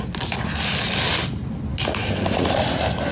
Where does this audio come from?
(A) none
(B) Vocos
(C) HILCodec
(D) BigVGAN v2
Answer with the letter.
A